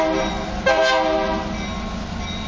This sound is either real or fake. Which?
real